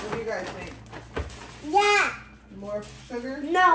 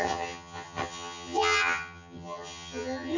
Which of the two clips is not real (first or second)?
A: second